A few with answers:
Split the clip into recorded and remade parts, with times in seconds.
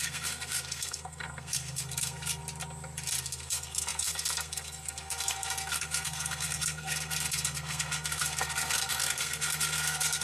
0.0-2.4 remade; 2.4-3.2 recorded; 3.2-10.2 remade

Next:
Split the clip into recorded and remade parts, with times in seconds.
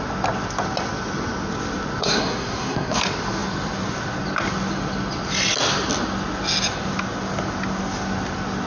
0.0-2.0 recorded; 2.0-3.0 remade; 3.0-8.7 recorded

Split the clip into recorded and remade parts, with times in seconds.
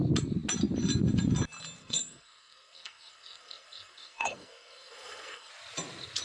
0.0-1.8 recorded; 1.8-5.5 remade; 5.5-6.2 recorded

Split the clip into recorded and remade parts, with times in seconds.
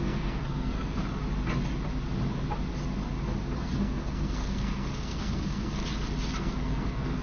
0.0-1.0 remade; 1.0-3.6 recorded; 3.6-5.8 remade; 5.8-6.4 recorded; 6.4-7.2 remade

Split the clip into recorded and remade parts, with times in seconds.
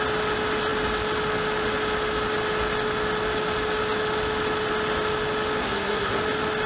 0.0-5.6 recorded; 5.6-6.2 remade; 6.2-6.7 recorded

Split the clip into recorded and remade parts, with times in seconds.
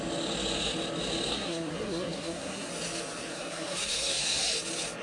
0.0-1.3 recorded; 1.3-2.7 remade; 2.7-3.3 recorded; 3.3-4.4 remade; 4.4-5.0 recorded